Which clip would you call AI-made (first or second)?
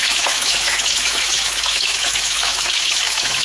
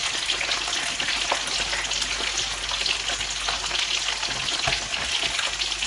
first